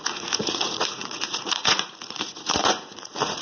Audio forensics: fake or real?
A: fake